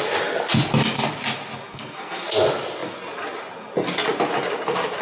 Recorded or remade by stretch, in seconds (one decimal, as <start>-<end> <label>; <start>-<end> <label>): 0.0-1.7 recorded; 1.7-2.2 remade; 2.2-5.0 recorded